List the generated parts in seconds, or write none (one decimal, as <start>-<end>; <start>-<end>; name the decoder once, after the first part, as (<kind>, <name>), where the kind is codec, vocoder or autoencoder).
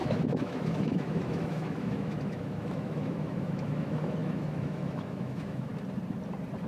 0.0-5.7 (autoencoder, DAC-VAE)